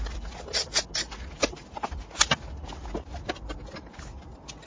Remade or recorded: recorded